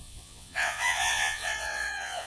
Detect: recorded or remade remade